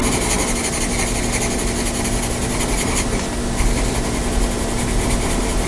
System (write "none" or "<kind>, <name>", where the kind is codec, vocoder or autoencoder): none